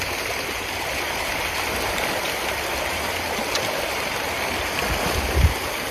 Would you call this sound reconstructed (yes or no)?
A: no